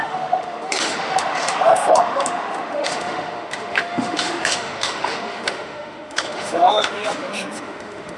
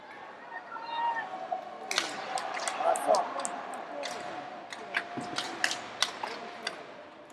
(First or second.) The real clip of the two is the second